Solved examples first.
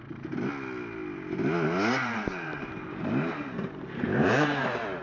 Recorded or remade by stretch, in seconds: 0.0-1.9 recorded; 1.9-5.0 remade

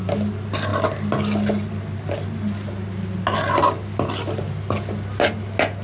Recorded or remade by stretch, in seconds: 0.0-5.8 recorded

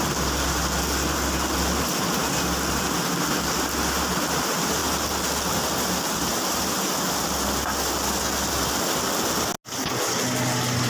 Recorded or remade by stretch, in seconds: 0.0-10.9 recorded

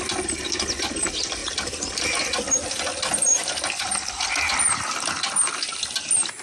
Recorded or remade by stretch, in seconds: 0.0-1.4 recorded; 1.4-2.4 remade; 2.4-3.3 recorded; 3.3-4.4 remade; 4.4-6.4 recorded